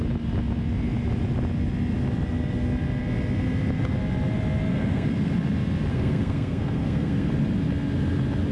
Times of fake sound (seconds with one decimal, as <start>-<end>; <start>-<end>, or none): 4.7-5.3; 5.9-7.3